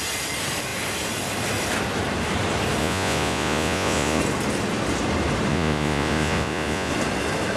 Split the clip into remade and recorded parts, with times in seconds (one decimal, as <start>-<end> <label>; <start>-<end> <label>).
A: 0.0-2.8 recorded; 2.8-4.2 remade; 4.2-5.5 recorded; 5.5-6.9 remade; 6.9-7.6 recorded